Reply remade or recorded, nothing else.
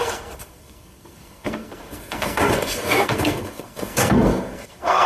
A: remade